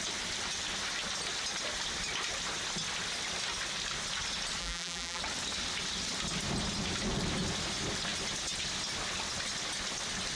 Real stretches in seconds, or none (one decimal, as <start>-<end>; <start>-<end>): 0.0-4.6; 5.2-10.4